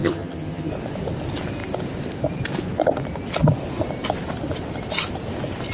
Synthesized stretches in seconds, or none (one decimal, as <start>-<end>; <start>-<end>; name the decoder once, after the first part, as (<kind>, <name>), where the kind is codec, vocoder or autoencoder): 0.0-0.7 (vocoder, HiFi-GAN)